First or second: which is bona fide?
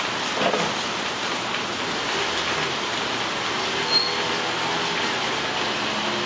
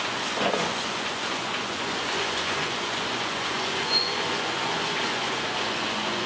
first